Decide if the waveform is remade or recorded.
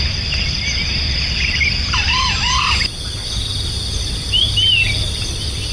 recorded